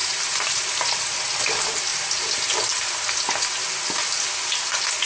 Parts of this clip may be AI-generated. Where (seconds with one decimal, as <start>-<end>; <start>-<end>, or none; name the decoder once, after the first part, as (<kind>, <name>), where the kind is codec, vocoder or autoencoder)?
0.0-1.0 (vocoder, BigVGAN v2)